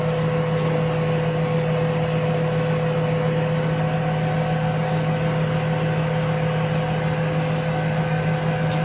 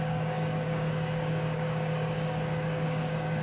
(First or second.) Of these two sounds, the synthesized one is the second